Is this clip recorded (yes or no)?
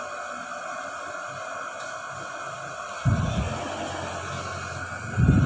yes